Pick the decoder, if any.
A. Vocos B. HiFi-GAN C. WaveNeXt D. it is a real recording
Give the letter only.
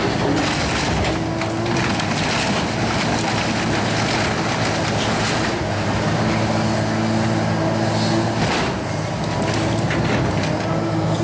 D